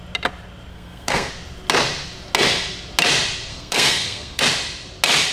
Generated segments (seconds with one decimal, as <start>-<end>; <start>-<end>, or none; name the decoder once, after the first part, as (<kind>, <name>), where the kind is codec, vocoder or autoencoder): 0.7-1.3 (codec, SNAC); 3.5-4.4